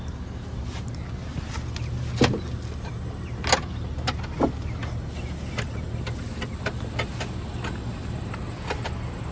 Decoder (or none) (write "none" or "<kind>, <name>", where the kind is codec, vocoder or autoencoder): none